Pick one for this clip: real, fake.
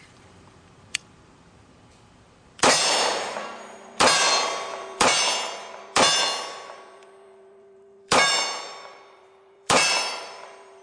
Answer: fake